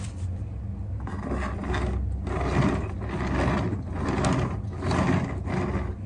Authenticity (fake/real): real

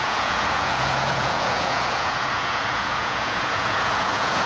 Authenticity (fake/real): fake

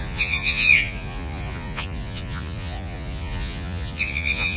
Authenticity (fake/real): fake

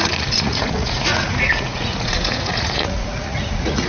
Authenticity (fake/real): fake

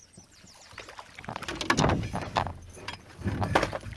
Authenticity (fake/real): real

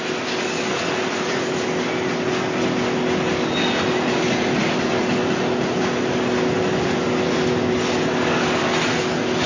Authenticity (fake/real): real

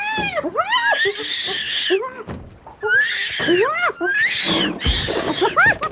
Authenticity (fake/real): real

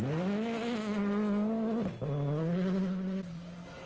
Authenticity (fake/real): real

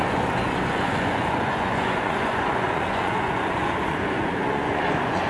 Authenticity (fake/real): fake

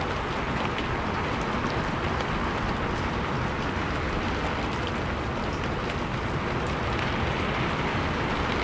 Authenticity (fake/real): real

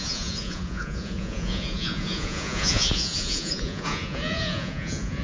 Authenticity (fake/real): fake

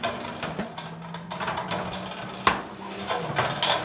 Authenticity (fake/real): real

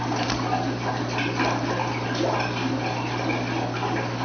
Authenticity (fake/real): real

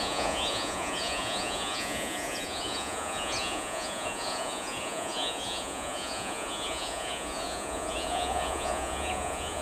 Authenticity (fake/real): fake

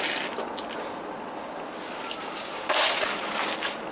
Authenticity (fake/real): real